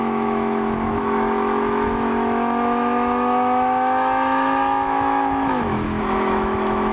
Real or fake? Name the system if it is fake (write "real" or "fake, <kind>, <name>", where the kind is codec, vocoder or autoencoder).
fake, autoencoder, DAC-VAE